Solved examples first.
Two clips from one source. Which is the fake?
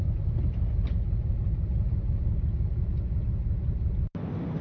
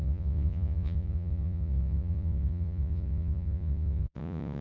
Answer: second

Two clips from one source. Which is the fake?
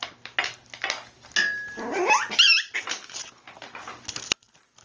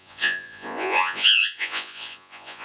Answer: second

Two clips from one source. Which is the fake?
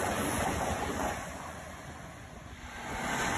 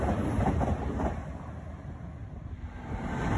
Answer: first